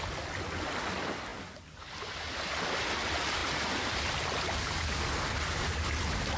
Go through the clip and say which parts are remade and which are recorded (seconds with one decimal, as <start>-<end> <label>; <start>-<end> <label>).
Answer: 0.0-6.4 recorded